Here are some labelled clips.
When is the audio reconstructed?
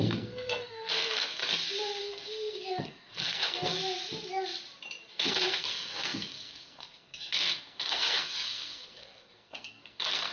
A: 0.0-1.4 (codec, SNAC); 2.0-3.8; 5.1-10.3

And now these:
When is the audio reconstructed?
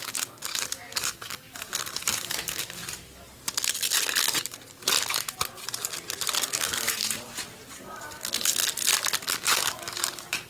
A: 0.0-2.8 (codec, DAC); 6.4-7.0; 7.7-8.5; 9.2-10.5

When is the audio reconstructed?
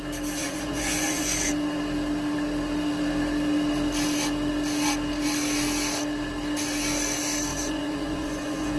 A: 0.4-1.5 (vocoder, Vocos); 7.5-8.8